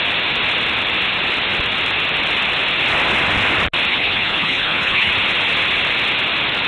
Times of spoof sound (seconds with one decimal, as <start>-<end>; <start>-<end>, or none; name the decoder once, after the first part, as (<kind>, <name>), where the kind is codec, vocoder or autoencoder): 3.9-5.1 (codec, HILCodec)